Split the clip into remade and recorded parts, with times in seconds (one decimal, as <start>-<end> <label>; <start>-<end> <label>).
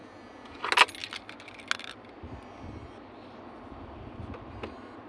0.0-0.6 remade; 0.6-5.1 recorded